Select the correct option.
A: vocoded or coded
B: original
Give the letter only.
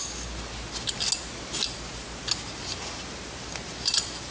B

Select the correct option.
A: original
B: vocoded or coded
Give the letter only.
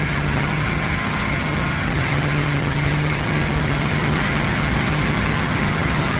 B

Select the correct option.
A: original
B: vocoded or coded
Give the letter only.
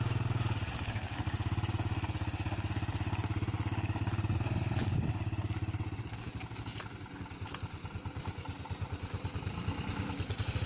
A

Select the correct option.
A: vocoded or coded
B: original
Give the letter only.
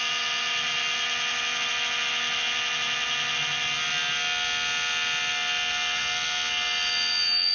B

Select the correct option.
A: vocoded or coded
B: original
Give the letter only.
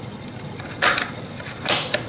B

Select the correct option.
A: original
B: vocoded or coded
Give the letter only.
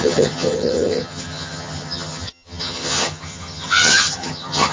B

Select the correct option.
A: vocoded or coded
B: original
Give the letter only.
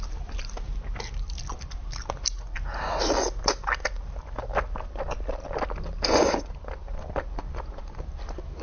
B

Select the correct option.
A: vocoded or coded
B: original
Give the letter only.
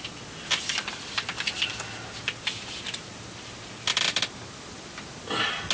B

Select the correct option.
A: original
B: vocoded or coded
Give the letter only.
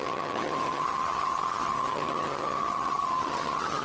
B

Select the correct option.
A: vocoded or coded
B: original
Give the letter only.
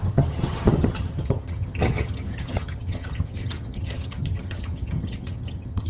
A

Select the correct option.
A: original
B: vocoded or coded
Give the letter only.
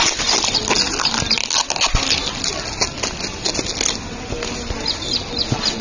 A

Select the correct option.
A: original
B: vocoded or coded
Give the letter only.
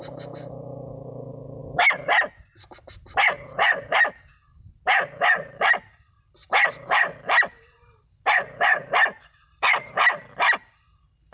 A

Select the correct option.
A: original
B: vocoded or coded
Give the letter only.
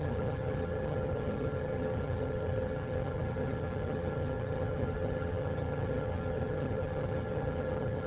B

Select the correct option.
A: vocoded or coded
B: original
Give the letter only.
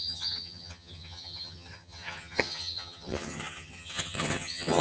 A